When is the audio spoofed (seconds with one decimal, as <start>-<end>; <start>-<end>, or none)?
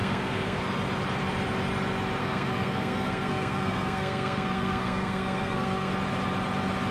0.0-0.6; 2.2-5.9